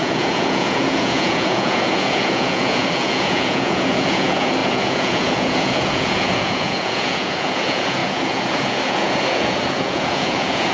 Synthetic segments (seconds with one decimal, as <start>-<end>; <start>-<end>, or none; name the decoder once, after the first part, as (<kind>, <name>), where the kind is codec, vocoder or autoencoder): 0.0-10.7 (vocoder, Vocos)